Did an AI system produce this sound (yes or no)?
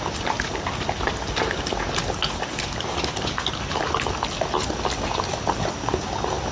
no